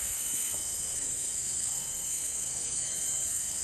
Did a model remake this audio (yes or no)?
yes